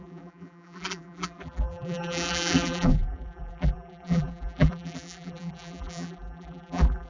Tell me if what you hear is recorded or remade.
remade